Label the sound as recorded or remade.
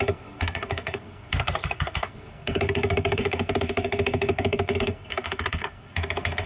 remade